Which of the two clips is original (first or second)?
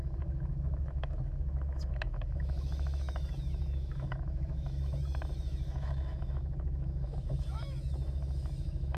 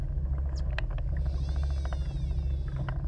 second